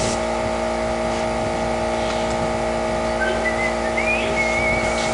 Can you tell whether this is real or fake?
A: real